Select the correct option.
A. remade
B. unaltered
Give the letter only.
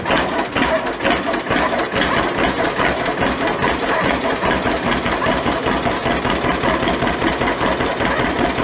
B